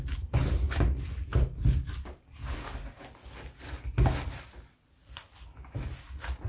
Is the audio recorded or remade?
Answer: recorded